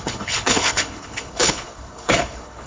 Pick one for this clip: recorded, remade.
remade